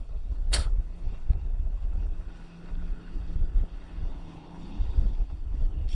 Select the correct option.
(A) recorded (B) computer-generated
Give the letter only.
B